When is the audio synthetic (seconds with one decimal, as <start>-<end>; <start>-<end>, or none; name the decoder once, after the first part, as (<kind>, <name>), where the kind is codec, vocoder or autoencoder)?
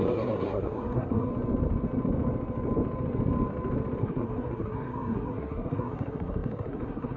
0.0-1.3 (codec, SNAC); 4.0-7.2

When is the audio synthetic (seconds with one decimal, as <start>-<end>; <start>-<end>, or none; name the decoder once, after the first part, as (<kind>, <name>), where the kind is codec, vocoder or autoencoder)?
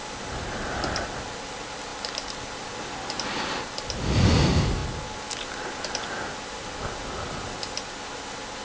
none